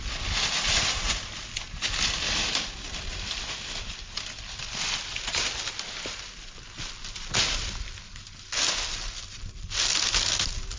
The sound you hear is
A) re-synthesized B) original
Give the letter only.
B